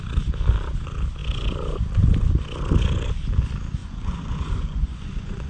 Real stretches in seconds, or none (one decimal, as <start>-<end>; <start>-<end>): 0.0-3.8